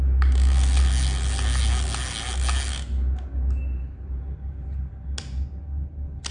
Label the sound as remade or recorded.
recorded